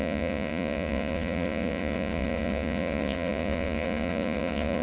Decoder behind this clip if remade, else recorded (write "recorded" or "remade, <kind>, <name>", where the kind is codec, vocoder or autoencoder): remade, vocoder, Vocos